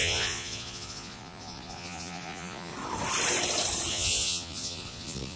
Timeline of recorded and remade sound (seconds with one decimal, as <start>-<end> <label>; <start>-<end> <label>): 0.0-2.7 remade; 2.7-3.9 recorded; 3.9-5.4 remade